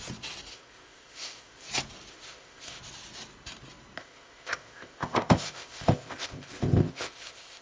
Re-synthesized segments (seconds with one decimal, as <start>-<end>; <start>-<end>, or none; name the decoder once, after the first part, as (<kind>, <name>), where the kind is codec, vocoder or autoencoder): 0.5-1.7 (codec, ZipCodec); 2.1-2.8; 4.0-7.6